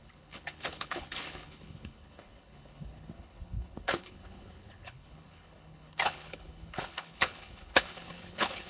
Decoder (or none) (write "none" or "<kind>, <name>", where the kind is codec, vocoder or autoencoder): codec, HILCodec